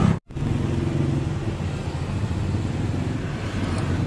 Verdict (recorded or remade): recorded